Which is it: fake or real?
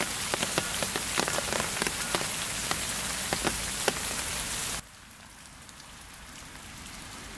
real